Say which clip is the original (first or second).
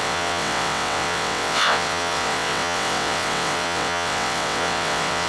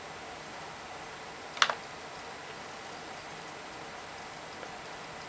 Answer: second